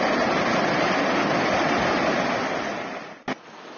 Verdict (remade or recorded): recorded